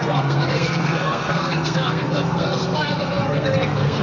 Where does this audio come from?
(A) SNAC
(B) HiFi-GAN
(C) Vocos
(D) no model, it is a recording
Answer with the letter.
A